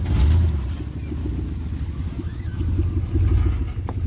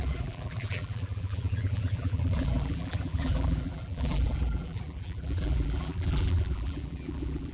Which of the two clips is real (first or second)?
first